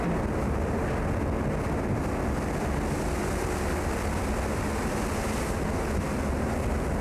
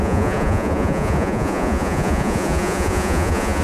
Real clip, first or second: first